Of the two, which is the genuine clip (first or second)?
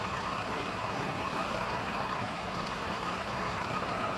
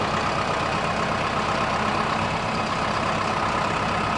second